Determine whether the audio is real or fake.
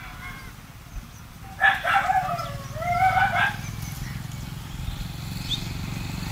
real